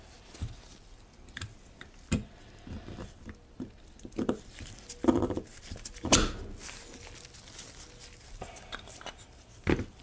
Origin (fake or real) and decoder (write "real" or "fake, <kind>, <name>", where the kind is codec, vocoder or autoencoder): real